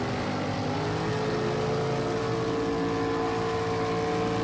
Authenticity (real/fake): real